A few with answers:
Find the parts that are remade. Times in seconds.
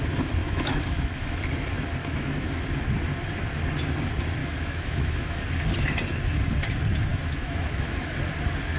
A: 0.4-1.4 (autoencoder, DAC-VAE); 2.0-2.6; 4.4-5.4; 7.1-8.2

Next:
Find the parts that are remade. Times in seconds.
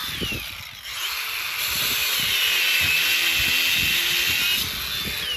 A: 0.0-2.4 (vocoder, BigVGAN v2)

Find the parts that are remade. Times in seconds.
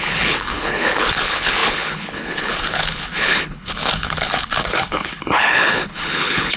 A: 0.0-6.6 (codec, HILCodec)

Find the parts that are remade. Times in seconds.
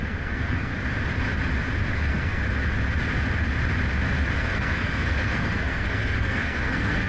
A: 0.0-0.7 (codec, SNAC); 1.9-2.4; 4.4-7.1